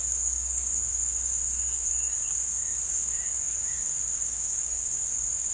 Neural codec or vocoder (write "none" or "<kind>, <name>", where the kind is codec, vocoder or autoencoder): codec, DAC